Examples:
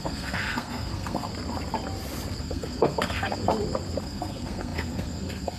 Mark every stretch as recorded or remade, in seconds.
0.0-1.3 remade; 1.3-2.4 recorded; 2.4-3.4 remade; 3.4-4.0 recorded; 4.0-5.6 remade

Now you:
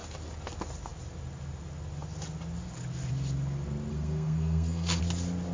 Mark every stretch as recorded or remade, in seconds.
0.0-3.9 recorded; 3.9-5.0 remade; 5.0-5.5 recorded

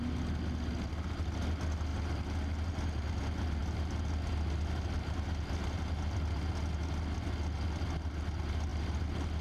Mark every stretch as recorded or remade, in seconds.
0.0-8.7 recorded; 8.7-9.4 remade

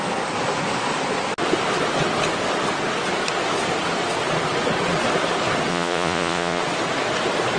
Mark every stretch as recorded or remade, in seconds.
0.0-5.7 recorded; 5.7-6.6 remade; 6.6-7.6 recorded

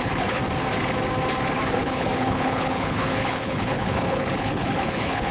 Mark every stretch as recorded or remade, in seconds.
0.0-0.4 remade; 0.4-1.7 recorded; 1.7-5.3 remade

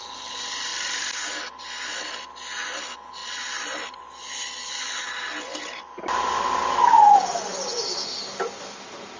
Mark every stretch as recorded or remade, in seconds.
0.0-3.2 recorded; 3.2-5.1 remade; 5.1-9.2 recorded

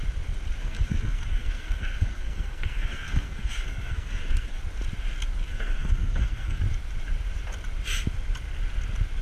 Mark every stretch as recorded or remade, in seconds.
0.0-0.6 recorded; 0.6-4.6 remade; 4.6-5.4 recorded; 5.4-6.6 remade; 6.6-9.2 recorded